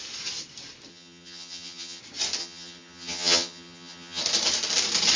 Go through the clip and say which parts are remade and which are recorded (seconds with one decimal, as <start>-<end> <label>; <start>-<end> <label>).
0.0-0.9 recorded; 0.9-2.0 remade; 2.0-2.4 recorded; 2.4-4.2 remade; 4.2-5.2 recorded